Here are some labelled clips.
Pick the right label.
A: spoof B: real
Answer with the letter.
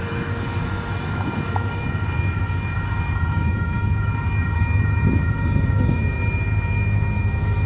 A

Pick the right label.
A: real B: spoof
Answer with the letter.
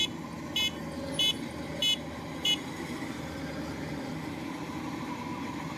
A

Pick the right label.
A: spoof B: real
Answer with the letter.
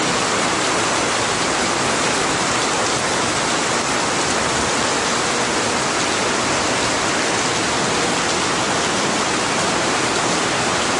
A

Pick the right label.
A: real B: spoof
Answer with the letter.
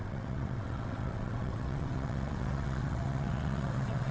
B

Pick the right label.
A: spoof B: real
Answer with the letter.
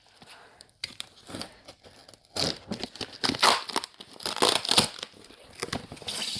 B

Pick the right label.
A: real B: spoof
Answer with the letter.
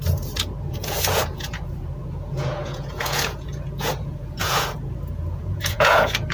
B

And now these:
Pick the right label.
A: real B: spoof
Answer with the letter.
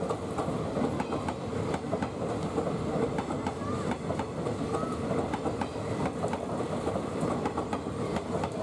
A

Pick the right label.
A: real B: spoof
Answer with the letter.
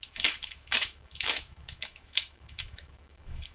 B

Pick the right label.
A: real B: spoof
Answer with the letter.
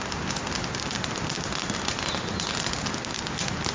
A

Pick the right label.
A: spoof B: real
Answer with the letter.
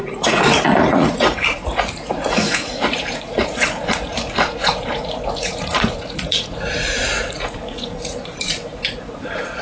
A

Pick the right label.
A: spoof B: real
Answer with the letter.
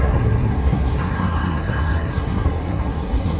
A